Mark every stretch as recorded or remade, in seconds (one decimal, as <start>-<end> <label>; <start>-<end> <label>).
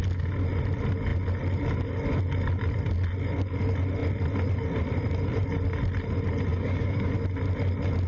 0.0-6.5 recorded; 6.5-7.1 remade; 7.1-8.1 recorded